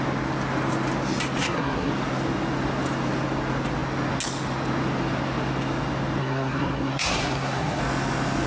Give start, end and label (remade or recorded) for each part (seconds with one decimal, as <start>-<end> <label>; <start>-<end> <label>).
0.0-1.4 recorded; 1.4-1.9 remade; 1.9-6.2 recorded; 6.2-7.8 remade; 7.8-8.5 recorded